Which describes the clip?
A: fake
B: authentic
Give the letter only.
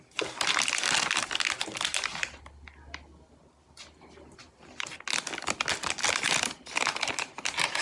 B